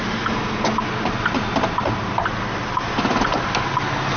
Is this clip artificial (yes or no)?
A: no